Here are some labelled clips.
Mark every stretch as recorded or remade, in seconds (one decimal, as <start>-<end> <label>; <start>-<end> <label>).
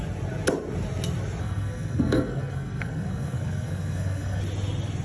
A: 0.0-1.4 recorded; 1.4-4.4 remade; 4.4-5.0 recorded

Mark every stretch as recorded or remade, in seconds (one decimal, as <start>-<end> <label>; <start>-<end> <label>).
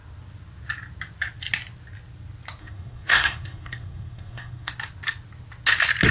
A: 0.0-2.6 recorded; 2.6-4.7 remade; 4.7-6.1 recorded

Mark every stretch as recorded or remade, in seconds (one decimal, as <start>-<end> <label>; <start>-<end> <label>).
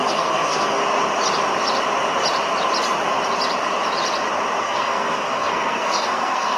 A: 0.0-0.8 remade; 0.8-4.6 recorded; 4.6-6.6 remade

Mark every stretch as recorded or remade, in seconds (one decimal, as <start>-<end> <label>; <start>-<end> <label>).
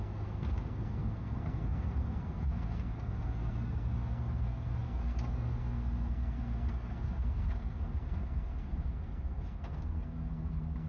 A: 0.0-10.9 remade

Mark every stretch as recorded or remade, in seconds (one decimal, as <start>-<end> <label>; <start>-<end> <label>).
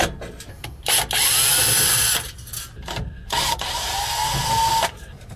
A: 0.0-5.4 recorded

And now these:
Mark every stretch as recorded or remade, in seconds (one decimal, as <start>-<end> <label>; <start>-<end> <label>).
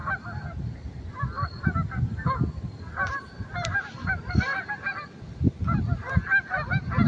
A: 0.0-7.1 recorded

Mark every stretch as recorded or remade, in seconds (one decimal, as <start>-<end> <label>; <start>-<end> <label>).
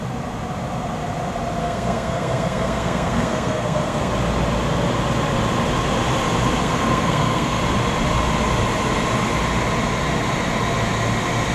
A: 0.0-1.6 recorded; 1.6-4.1 remade; 4.1-6.6 recorded; 6.6-7.6 remade; 7.6-11.5 recorded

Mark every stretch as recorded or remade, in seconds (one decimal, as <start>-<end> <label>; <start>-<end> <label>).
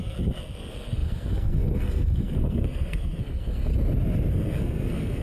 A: 0.0-3.7 remade; 3.7-4.3 recorded; 4.3-5.2 remade